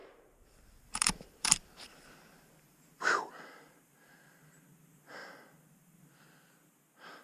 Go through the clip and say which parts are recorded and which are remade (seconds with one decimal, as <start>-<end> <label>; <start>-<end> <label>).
0.0-3.2 remade; 3.2-5.2 recorded; 5.2-6.0 remade; 6.0-7.2 recorded